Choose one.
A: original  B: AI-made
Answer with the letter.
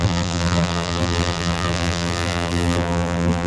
B